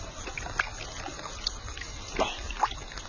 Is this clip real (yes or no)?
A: yes